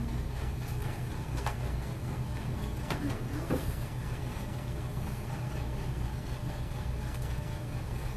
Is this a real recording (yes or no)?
no